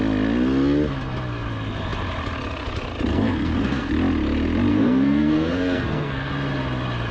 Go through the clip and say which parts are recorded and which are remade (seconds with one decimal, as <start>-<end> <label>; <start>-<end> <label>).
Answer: 0.0-3.1 recorded; 3.1-3.9 remade; 3.9-4.7 recorded; 4.7-6.3 remade; 6.3-7.1 recorded

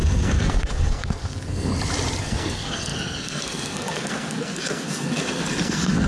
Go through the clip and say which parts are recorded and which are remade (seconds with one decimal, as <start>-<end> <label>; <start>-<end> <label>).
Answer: 0.0-1.7 remade; 1.7-2.2 recorded; 2.2-6.1 remade

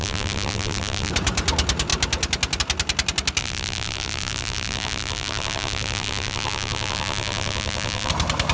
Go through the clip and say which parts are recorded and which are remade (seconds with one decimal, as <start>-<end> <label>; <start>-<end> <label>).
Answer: 0.0-1.1 remade; 1.1-3.4 recorded; 3.4-8.1 remade; 8.1-8.5 recorded

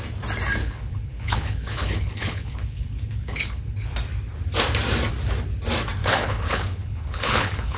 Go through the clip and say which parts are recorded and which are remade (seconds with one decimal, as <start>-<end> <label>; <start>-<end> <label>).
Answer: 0.0-0.6 recorded; 0.6-3.9 remade; 3.9-6.0 recorded; 6.0-7.8 remade